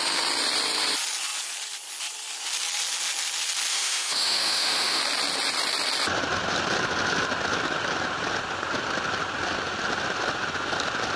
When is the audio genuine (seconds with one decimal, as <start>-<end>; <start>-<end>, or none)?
0.0-3.7; 5.0-11.2